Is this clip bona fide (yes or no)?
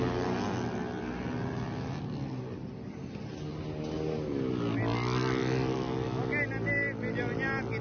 yes